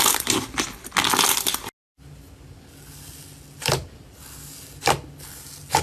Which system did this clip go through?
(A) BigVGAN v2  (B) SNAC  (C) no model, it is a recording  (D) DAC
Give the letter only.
C